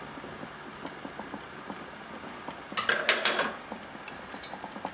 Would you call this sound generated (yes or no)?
no